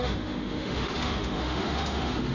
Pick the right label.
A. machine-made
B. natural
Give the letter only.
A